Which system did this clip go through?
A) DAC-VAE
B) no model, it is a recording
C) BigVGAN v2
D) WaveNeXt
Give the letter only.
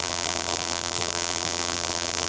C